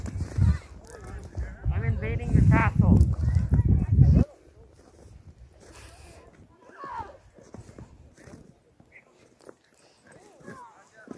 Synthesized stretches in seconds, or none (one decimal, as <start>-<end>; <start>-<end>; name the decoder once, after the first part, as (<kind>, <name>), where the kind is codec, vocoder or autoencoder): 2.6-3.5 (vocoder, BigVGAN v2)